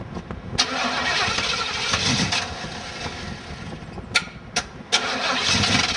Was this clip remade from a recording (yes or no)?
no